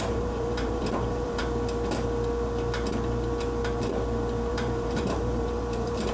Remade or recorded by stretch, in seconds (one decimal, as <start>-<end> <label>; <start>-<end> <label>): 0.0-1.4 remade; 1.4-4.5 recorded; 4.5-6.1 remade